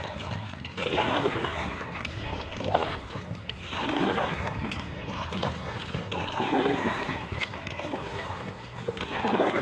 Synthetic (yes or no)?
yes